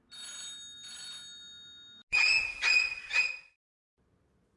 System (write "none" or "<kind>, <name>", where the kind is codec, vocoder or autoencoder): none